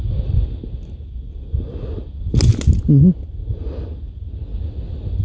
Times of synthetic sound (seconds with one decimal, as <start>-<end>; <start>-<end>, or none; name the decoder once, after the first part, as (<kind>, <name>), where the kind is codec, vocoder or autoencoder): none